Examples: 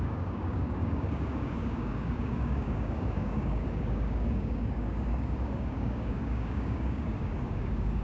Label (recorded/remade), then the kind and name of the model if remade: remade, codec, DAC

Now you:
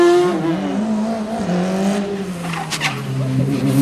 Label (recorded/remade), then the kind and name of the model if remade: recorded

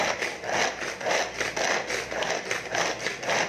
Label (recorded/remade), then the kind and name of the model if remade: recorded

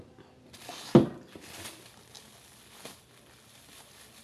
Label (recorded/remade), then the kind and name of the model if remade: recorded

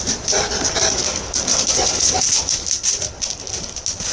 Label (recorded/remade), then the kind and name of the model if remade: recorded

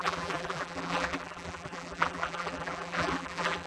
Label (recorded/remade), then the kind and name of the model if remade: remade, vocoder, BigVGAN v2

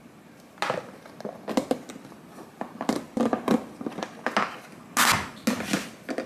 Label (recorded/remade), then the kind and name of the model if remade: recorded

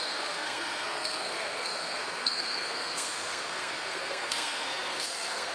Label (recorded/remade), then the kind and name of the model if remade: remade, codec, SNAC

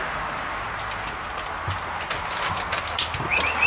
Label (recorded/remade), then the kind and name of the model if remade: recorded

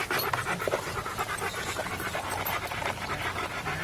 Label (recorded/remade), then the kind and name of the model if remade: remade, vocoder, BigVGAN v2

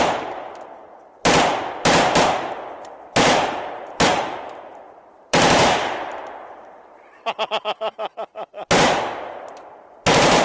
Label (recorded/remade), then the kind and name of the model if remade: remade, vocoder, BigVGAN v2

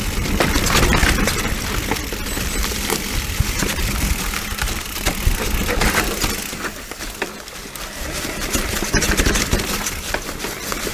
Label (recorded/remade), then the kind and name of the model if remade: recorded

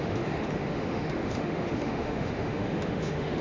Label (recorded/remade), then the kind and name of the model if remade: remade, autoencoder, DAC-VAE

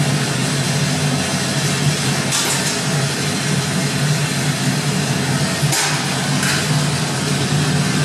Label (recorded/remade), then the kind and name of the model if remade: recorded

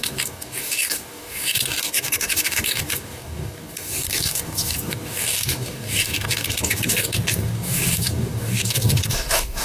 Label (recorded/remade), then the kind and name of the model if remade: remade, codec, DAC